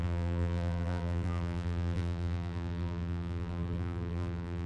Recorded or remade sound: remade